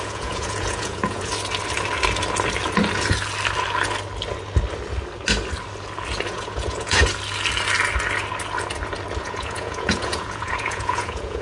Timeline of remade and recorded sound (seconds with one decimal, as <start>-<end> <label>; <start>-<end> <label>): 0.0-1.3 remade; 1.3-6.3 recorded; 6.3-7.0 remade; 7.0-9.2 recorded; 9.2-11.4 remade